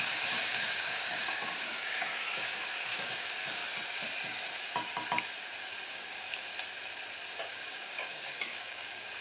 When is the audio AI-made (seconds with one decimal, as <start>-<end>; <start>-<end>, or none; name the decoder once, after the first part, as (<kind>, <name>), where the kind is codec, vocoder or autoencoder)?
0.0-3.6 (codec, DAC); 5.9-6.5; 7.5-9.2